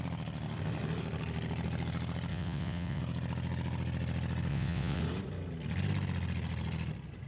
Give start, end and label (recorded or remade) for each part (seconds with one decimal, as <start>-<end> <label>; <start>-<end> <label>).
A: 0.0-2.3 recorded; 2.3-3.0 remade; 3.0-4.5 recorded; 4.5-5.0 remade; 5.0-7.3 recorded